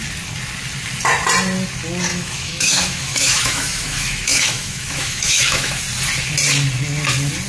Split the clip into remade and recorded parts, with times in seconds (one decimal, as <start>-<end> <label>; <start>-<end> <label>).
0.0-2.1 recorded; 2.1-5.8 remade; 5.8-7.5 recorded